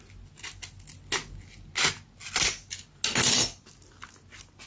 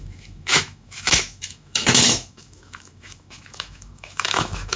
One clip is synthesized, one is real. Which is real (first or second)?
first